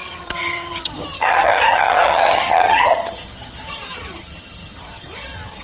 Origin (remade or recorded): remade